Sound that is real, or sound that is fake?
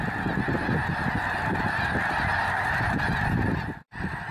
real